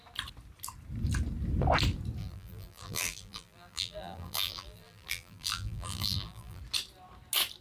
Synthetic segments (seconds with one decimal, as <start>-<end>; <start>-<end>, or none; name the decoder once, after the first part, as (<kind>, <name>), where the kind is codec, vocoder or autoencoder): 2.2-6.6 (vocoder, BigVGAN v2)